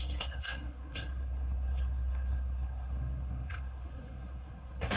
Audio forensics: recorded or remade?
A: remade